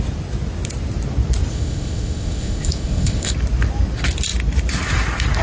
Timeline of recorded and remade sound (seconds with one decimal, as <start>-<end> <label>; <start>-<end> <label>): 0.0-1.5 recorded; 1.5-3.3 remade; 3.3-5.4 recorded